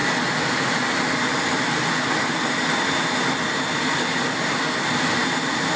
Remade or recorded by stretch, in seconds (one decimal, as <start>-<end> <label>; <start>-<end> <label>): 0.0-5.8 recorded